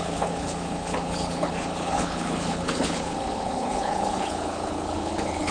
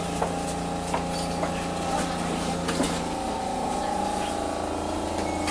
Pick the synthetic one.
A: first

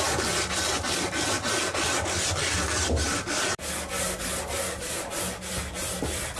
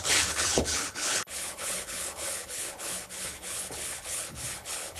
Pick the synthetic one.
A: second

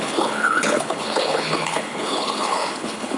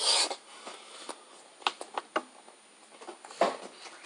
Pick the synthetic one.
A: first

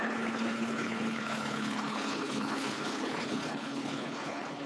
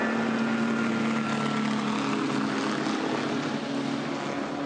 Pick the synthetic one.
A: first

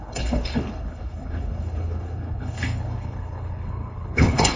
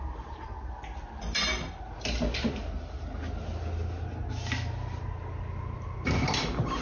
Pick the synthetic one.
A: first